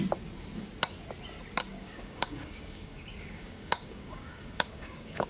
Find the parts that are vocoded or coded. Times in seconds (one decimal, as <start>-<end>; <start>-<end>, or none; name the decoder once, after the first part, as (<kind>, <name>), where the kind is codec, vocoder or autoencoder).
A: 1.7-5.3 (codec, DAC)